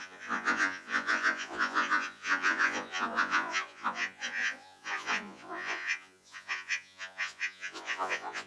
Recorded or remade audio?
remade